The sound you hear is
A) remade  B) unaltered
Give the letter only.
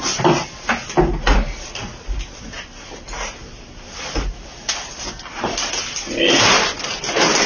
B